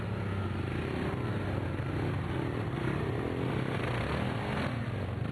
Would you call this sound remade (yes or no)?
no